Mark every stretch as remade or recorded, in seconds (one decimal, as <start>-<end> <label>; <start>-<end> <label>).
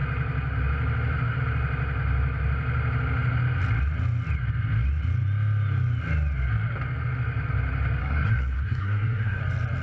0.0-8.0 recorded; 8.0-9.4 remade; 9.4-9.8 recorded